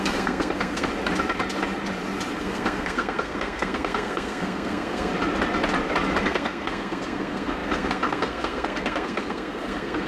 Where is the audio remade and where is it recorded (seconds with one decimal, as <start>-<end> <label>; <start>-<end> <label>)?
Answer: 0.0-0.9 remade; 0.9-2.4 recorded; 2.4-5.1 remade; 5.1-6.2 recorded; 6.2-10.1 remade